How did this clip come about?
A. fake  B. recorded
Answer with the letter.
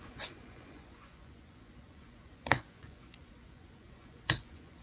A